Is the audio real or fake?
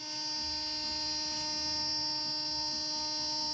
real